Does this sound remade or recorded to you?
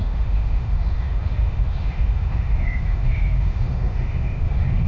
remade